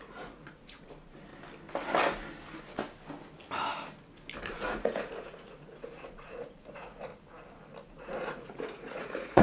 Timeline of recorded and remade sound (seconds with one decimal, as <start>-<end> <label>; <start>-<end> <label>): 0.0-1.3 remade; 1.3-4.5 recorded; 4.5-7.1 remade; 7.1-7.9 recorded; 7.9-9.4 remade